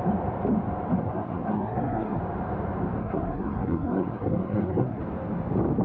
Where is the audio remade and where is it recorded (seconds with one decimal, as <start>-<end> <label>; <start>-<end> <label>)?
0.0-1.0 recorded; 1.0-2.2 remade; 2.2-3.0 recorded; 3.0-5.0 remade; 5.0-5.8 recorded